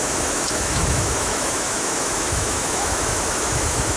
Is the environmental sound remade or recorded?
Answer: remade